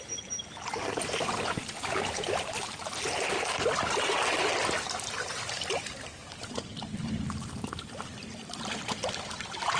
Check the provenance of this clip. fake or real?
fake